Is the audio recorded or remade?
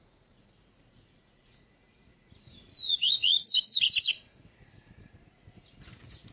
remade